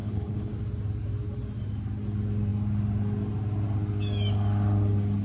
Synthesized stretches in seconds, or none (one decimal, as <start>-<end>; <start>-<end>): 0.0-0.5